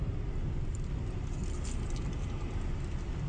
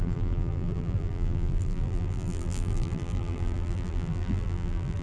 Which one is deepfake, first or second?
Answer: second